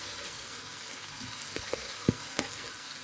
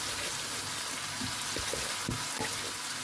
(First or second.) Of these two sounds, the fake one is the first